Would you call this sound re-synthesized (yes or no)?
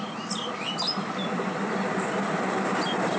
no